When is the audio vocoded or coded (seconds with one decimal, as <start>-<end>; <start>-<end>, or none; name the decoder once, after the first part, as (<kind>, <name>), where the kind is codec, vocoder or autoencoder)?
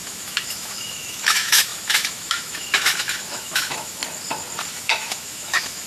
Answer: 0.0-4.0 (autoencoder, DAC-VAE); 4.7-5.9